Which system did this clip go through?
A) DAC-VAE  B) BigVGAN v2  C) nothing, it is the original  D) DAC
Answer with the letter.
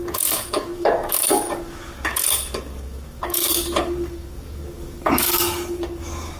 D